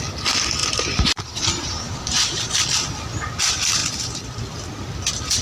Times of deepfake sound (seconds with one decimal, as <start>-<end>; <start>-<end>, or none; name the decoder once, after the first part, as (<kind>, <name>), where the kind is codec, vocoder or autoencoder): 0.6-2.5 (vocoder, BigVGAN v2)